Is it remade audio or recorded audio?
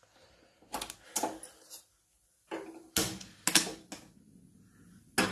recorded